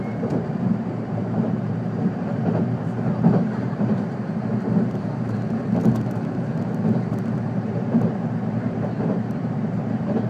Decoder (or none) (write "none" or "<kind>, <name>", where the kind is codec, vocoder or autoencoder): vocoder, BigVGAN v2